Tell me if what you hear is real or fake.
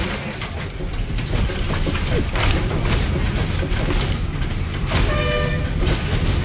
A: real